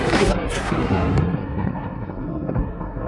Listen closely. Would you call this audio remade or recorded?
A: remade